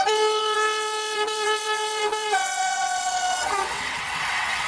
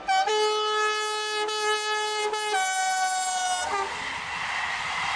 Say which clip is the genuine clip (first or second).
second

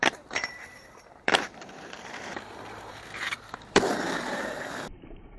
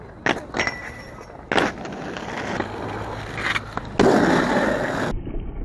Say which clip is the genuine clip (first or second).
second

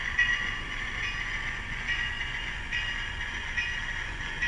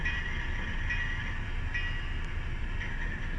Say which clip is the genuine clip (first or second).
second